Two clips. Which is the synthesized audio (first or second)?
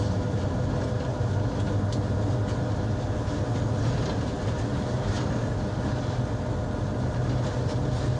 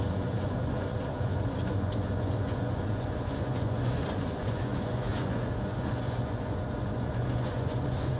second